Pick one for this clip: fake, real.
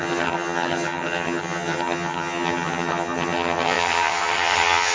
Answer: fake